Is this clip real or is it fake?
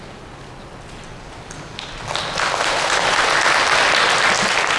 real